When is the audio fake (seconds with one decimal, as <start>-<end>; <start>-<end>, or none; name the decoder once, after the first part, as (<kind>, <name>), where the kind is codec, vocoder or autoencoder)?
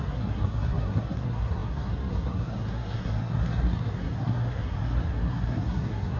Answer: 0.0-6.2 (codec, SNAC)